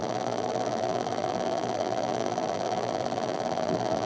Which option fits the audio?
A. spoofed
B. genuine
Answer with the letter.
A